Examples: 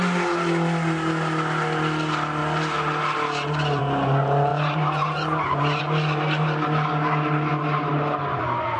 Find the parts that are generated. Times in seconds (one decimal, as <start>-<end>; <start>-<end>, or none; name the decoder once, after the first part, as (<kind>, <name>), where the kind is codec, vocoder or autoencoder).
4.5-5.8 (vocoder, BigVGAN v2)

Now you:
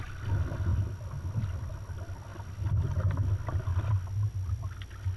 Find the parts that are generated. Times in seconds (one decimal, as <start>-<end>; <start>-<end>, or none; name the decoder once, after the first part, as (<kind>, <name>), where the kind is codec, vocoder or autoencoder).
none

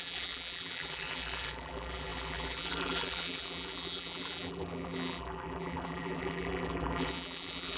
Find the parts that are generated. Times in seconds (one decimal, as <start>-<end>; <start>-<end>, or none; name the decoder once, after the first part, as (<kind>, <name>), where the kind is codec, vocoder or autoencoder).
0.0-7.8 (vocoder, BigVGAN v2)

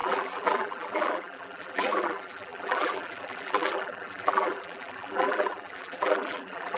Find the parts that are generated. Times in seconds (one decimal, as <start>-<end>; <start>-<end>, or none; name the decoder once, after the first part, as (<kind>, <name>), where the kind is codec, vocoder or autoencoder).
0.0-6.8 (vocoder, BigVGAN v2)

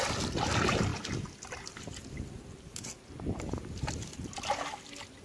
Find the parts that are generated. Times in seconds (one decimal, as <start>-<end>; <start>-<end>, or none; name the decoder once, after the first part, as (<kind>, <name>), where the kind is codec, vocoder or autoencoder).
none

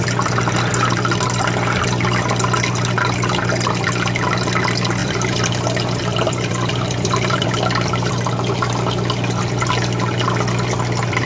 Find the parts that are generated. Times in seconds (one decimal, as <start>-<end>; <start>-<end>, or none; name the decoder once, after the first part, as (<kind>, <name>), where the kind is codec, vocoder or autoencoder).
5.0-8.1 (vocoder, BigVGAN v2)

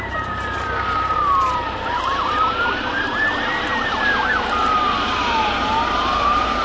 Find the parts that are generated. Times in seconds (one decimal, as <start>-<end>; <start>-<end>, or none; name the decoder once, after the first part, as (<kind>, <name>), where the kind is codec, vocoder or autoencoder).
0.0-6.6 (vocoder, BigVGAN v2)

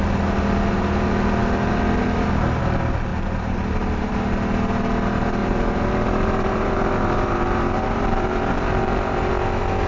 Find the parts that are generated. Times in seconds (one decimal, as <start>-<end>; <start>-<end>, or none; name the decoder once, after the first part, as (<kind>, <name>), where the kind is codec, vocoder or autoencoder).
3.1-4.1 (vocoder, BigVGAN v2); 5.4-9.3